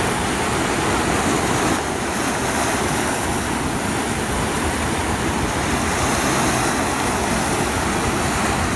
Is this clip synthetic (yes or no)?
no